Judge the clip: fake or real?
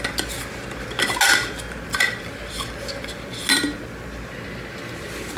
real